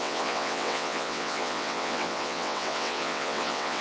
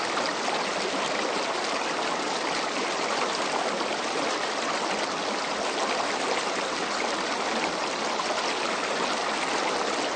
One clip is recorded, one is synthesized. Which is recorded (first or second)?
second